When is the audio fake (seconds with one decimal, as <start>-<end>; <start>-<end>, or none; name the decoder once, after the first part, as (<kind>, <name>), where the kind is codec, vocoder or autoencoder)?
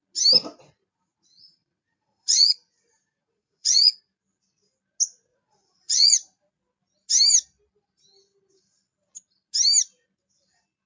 0.8-4.0 (vocoder, Vocos); 5.3-6.5